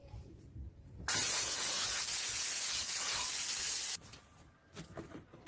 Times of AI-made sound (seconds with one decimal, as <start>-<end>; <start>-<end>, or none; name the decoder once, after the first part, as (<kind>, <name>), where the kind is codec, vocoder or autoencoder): 0.0-3.3 (vocoder, Vocos)